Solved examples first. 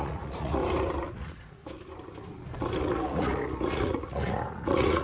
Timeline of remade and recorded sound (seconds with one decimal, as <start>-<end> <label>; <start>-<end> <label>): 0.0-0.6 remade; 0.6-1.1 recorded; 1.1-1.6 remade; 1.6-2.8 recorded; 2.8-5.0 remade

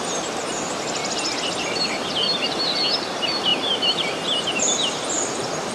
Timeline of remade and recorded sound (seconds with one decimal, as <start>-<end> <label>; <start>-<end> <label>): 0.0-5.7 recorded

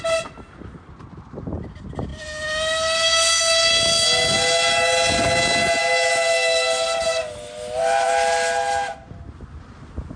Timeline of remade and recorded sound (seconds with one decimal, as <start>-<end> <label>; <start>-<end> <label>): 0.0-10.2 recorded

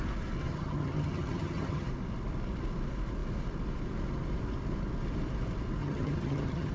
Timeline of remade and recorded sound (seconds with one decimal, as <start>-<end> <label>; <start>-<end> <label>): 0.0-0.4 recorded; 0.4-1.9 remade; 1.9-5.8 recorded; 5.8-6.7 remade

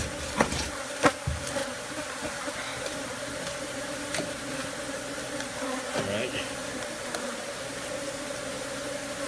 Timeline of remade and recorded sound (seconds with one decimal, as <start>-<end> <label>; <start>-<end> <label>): 0.0-1.6 recorded; 1.6-2.2 remade; 2.2-2.7 recorded; 2.7-4.0 remade; 4.0-6.6 recorded; 6.6-8.2 remade; 8.2-9.3 recorded

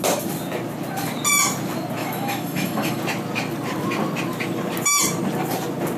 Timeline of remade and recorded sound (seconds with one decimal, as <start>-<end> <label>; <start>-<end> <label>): 0.0-2.0 recorded; 2.0-3.0 remade; 3.0-6.0 recorded